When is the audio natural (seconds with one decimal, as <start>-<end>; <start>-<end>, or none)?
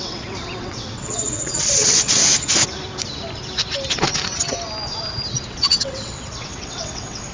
2.2-5.5